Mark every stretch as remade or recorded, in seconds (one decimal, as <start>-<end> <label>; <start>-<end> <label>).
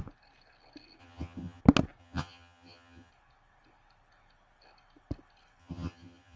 0.0-1.0 recorded; 1.0-1.6 remade; 1.6-2.0 recorded; 2.0-3.1 remade; 3.1-5.6 recorded; 5.6-6.4 remade